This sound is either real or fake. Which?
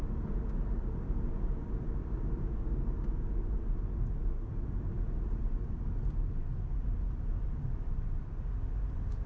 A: real